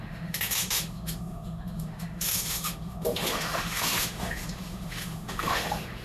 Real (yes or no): no